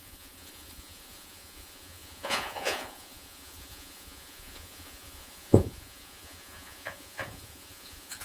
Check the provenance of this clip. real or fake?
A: fake